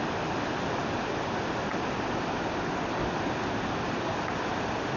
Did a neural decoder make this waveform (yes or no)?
no